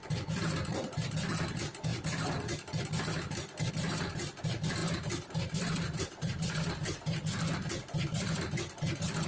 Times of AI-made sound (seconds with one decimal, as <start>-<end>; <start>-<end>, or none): 4.8-7.0

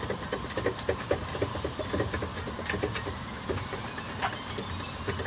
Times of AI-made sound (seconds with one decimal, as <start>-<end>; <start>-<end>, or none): none

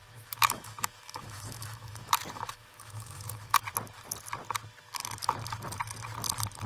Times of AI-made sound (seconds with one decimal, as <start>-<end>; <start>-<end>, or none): 0.0-3.6

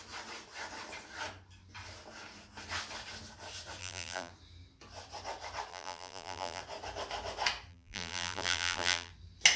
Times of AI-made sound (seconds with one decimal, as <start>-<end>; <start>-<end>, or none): 3.8-4.3; 5.7-6.6; 7.7-9.1

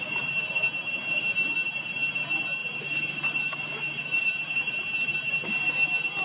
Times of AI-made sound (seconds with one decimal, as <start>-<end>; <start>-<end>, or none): 2.6-5.3